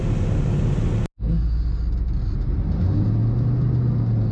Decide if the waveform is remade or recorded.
recorded